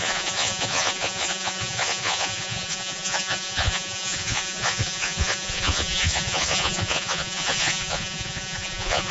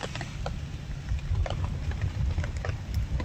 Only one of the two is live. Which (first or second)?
second